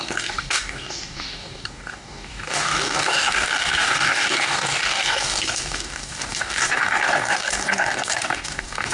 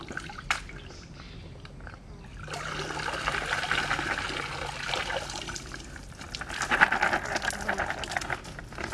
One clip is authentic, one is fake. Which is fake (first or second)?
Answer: first